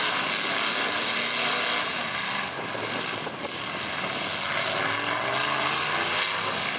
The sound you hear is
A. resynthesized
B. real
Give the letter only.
B